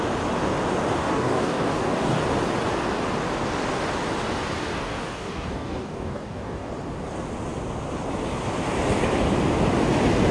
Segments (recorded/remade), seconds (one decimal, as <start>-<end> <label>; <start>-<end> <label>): 0.0-1.0 recorded; 1.0-2.2 remade; 2.2-4.7 recorded; 4.7-6.7 remade; 6.7-10.3 recorded